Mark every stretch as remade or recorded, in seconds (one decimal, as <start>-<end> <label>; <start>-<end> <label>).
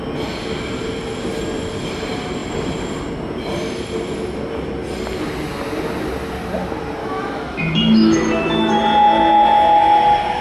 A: 0.0-7.0 recorded; 7.0-8.8 remade; 8.8-10.4 recorded